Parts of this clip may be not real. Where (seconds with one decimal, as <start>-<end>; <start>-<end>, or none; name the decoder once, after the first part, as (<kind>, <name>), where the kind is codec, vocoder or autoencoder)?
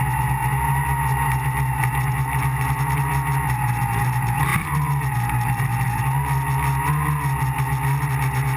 none